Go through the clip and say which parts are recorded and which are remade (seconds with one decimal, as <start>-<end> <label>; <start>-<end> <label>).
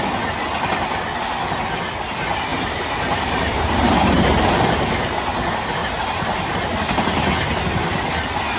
0.0-2.5 recorded; 2.5-4.1 remade; 4.1-5.8 recorded; 5.8-6.5 remade; 6.5-8.6 recorded